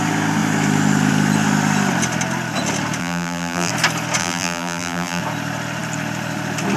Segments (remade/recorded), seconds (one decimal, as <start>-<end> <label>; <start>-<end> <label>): 0.0-3.0 recorded; 3.0-3.7 remade; 3.7-4.2 recorded; 4.2-5.2 remade; 5.2-6.8 recorded